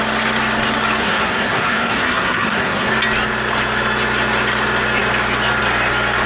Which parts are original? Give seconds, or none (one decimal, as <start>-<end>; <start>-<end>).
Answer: 0.0-1.0; 2.9-6.3